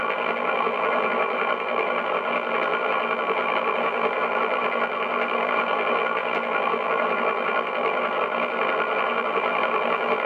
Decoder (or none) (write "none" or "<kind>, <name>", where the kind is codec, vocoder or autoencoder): vocoder, BigVGAN v2